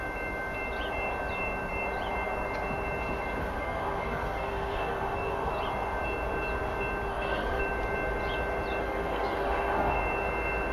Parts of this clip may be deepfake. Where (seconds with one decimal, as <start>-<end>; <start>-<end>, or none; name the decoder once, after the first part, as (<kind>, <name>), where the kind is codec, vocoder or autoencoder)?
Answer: 3.4-5.5 (codec, SNAC); 7.1-7.6; 8.8-10.0